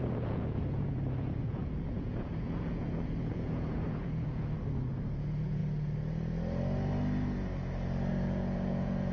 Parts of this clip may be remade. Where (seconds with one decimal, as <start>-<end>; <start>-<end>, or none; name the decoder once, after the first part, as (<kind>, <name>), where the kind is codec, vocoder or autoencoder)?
0.0-5.6 (vocoder, Vocos); 8.1-9.1